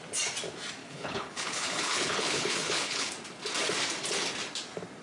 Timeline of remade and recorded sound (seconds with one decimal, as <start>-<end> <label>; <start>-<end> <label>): 0.0-0.8 recorded; 0.8-3.1 remade; 3.1-5.0 recorded